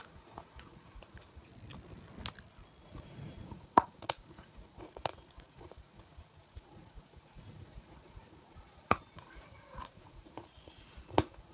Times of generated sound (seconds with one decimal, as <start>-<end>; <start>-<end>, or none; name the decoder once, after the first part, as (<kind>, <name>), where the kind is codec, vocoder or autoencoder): 0.0-1.5 (vocoder, Vocos); 2.8-11.5